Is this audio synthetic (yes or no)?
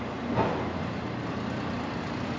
no